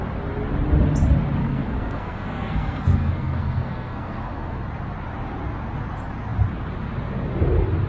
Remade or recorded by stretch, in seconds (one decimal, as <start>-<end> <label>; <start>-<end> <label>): 0.0-1.4 recorded; 1.4-4.6 remade; 4.6-7.9 recorded